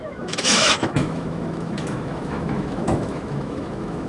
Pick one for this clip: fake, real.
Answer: fake